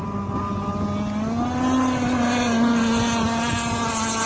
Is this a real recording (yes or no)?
yes